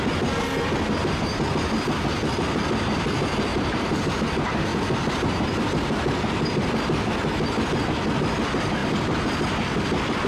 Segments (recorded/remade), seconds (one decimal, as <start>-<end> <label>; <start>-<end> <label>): 0.0-3.5 recorded; 3.5-4.1 remade; 4.1-8.8 recorded; 8.8-10.3 remade